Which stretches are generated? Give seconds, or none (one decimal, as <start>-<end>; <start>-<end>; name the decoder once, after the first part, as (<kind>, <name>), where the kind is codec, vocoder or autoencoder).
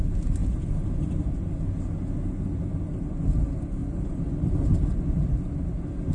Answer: 3.8-5.4 (vocoder, BigVGAN v2)